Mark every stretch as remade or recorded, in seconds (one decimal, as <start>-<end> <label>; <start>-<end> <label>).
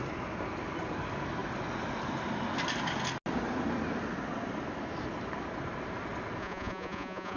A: 0.0-6.4 recorded; 6.4-7.4 remade